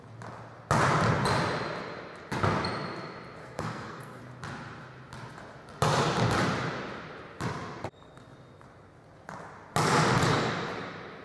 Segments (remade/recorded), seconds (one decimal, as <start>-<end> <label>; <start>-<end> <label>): 0.0-3.4 recorded; 3.4-4.2 remade; 4.2-11.2 recorded